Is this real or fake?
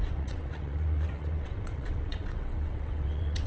fake